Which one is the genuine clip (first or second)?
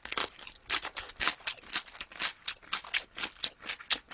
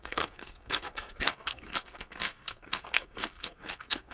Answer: first